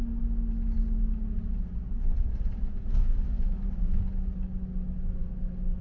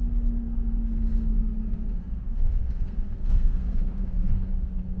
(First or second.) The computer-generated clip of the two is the second